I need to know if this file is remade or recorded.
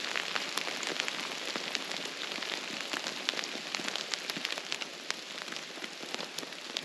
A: recorded